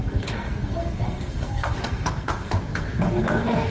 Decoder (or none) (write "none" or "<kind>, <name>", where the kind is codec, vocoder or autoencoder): codec, SNAC